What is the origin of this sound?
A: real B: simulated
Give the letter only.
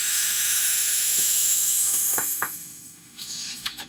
B